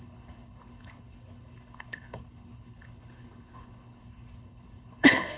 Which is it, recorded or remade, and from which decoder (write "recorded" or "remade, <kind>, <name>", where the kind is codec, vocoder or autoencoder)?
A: remade, codec, HILCodec